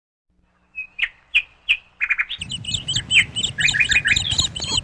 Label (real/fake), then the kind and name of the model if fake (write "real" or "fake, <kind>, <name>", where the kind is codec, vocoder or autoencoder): real